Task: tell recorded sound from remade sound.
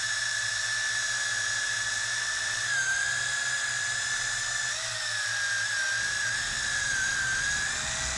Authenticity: recorded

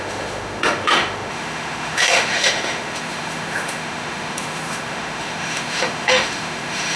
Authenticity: remade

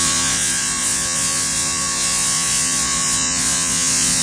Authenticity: remade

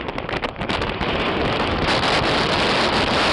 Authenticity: recorded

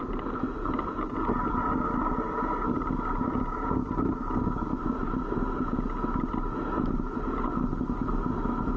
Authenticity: recorded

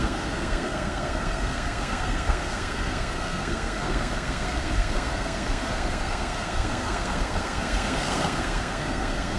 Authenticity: remade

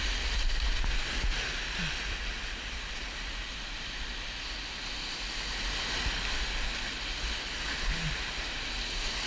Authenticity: recorded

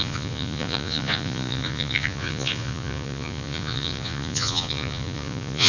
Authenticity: remade